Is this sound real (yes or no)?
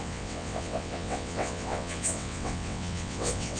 no